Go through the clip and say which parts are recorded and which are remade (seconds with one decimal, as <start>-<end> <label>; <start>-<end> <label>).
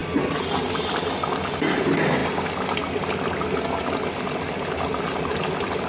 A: 0.0-5.9 recorded